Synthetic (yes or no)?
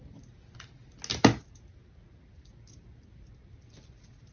no